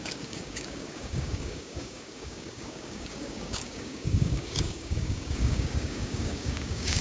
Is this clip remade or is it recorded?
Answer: remade